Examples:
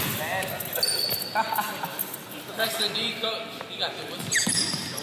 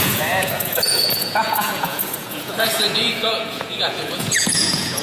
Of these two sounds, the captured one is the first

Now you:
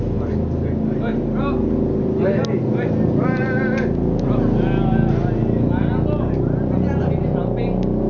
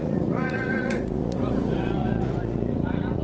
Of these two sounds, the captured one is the first